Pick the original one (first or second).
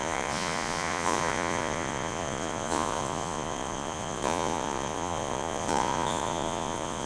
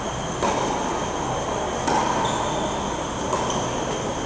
second